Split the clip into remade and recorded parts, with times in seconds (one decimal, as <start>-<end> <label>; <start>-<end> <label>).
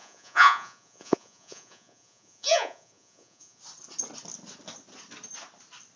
0.0-3.6 remade; 3.6-6.0 recorded